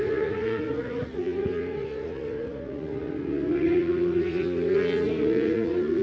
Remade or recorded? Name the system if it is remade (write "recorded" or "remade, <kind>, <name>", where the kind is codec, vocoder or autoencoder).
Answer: remade, vocoder, Vocos